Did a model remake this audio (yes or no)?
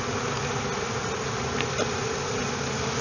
no